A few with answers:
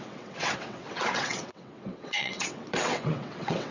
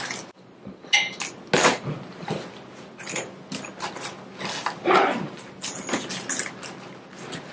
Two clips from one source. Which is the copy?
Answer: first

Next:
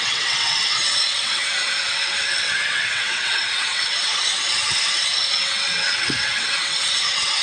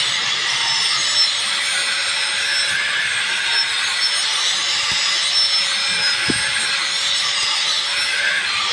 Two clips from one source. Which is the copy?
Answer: first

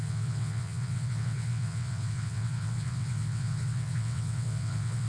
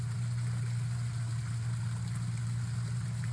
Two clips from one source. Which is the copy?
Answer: first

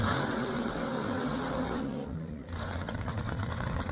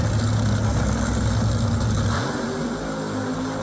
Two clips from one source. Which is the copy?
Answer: first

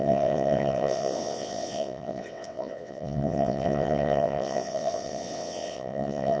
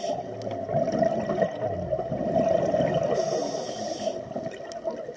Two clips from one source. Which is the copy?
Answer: first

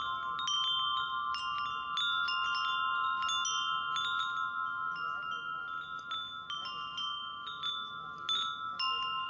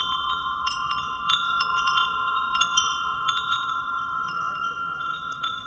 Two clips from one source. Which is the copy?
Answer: second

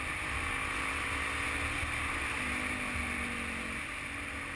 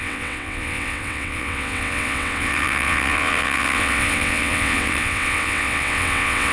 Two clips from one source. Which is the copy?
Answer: second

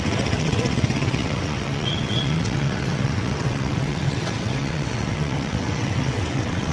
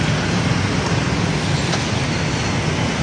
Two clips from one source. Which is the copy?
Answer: first